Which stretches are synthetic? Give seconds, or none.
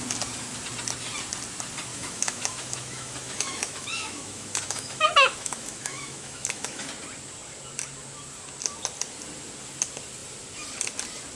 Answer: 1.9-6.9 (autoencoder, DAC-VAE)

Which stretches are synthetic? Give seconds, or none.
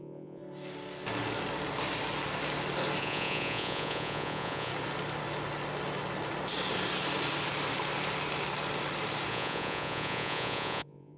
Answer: 0.0-0.4 (vocoder, Vocos); 3.0-4.7; 9.3-11.2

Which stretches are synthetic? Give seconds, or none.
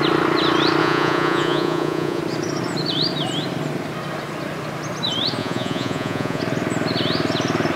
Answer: 0.8-2.2 (vocoder, Vocos); 5.4-6.4